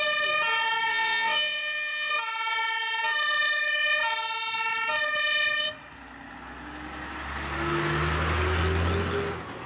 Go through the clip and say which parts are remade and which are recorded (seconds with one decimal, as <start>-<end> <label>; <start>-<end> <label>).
0.0-0.9 recorded; 0.9-2.1 remade; 2.1-9.7 recorded